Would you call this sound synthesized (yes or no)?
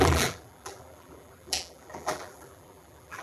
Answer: yes